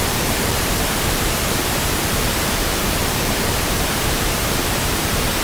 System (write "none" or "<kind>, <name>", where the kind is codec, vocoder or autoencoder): vocoder, BigVGAN v2